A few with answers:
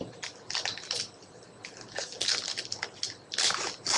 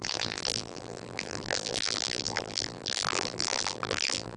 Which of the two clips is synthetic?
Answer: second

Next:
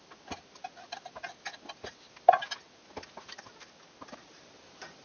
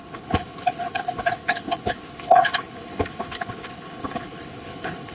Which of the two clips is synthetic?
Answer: second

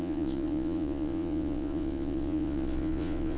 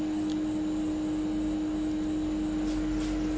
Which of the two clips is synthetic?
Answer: first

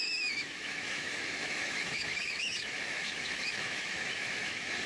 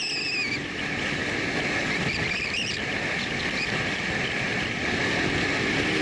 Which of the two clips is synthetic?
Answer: first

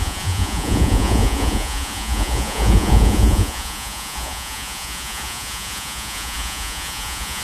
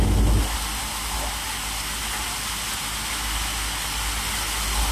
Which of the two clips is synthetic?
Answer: first